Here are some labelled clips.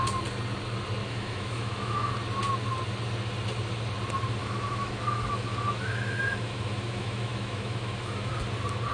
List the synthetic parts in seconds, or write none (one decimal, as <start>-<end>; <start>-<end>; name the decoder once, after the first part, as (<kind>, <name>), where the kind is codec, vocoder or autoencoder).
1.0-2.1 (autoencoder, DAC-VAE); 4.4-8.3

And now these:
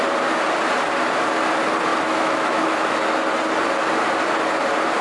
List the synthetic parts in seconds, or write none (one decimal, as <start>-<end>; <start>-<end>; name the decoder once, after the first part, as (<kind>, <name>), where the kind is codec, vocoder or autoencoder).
1.9-3.0 (autoencoder, DAC-VAE)

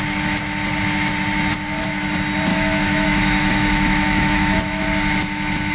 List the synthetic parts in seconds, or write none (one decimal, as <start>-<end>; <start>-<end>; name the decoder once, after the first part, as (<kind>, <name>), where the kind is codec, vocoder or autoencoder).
2.5-4.8 (autoencoder, DAC-VAE)

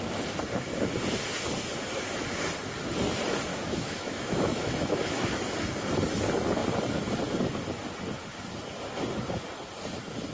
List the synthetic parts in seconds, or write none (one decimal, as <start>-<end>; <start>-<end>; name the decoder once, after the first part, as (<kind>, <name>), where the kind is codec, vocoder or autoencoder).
3.5-5.4 (autoencoder, DAC-VAE)